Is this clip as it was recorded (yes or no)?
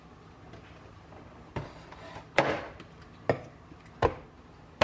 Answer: yes